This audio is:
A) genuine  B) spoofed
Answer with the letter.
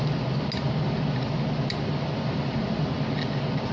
A